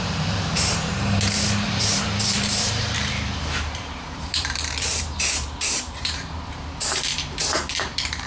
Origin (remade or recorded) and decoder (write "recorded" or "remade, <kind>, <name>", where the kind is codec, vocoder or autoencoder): remade, vocoder, BigVGAN v2